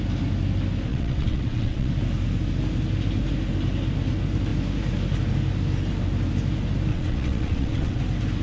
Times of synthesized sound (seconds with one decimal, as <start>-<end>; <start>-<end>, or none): 0.9-1.9; 6.9-8.0